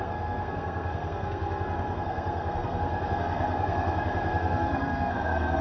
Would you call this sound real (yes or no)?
no